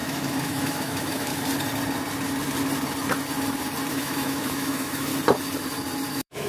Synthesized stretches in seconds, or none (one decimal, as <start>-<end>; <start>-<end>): 0.0-1.3; 3.9-5.1; 6.1-6.5

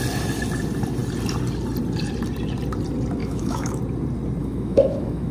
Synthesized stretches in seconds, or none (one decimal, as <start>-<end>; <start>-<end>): 3.2-3.8; 4.4-5.3

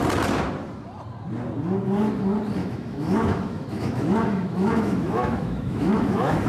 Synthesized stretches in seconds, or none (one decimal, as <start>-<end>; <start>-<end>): 2.6-6.5